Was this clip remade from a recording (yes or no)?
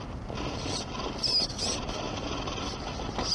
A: no